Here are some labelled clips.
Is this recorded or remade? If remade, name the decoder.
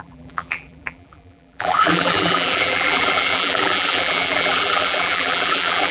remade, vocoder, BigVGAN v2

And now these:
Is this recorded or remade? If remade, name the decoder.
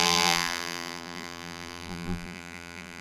remade, vocoder, BigVGAN v2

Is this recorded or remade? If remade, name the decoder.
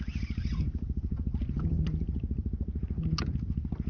recorded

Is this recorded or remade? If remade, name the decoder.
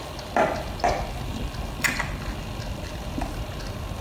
recorded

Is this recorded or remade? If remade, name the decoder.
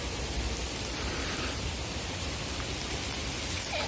remade, vocoder, BigVGAN v2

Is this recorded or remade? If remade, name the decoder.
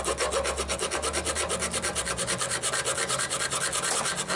recorded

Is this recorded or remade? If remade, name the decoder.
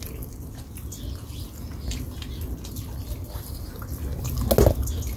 recorded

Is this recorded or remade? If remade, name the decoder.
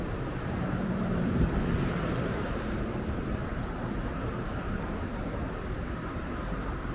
remade, vocoder, BigVGAN v2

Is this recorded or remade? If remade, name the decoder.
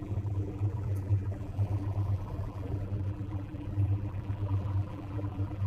remade, vocoder, BigVGAN v2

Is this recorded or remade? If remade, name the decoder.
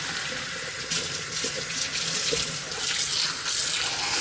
recorded